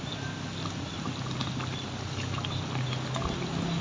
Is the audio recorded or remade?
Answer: recorded